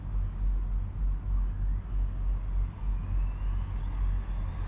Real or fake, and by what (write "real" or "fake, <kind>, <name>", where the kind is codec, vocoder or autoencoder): real